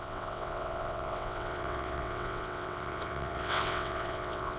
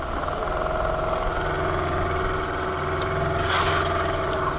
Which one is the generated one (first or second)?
first